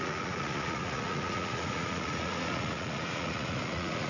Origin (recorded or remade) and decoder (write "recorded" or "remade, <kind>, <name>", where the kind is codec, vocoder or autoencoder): remade, vocoder, Vocos